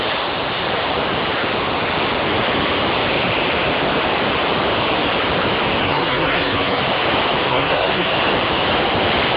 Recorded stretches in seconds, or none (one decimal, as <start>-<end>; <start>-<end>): 0.0-5.8; 6.8-7.5; 8.1-9.4

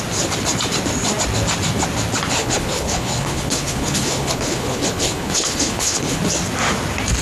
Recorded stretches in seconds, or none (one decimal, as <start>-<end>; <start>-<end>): 0.0-2.4; 6.2-7.2